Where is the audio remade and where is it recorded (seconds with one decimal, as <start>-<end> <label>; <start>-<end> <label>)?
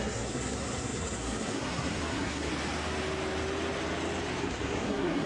0.0-2.5 remade; 2.5-4.4 recorded; 4.4-5.3 remade